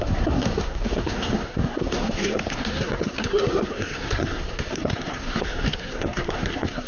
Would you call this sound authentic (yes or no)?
no